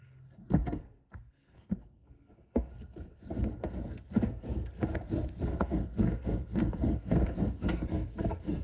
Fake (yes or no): yes